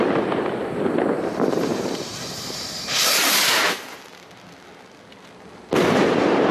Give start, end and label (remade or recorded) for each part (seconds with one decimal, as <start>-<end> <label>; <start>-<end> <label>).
0.0-1.7 recorded; 1.7-4.0 remade; 4.0-6.5 recorded